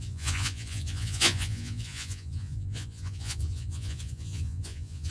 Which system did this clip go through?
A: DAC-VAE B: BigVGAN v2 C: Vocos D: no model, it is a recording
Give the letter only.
C